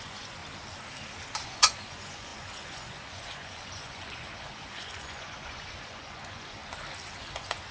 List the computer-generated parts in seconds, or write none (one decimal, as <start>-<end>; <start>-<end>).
0.0-0.4; 1.4-6.6; 7.2-7.7